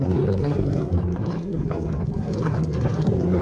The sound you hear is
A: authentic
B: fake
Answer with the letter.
B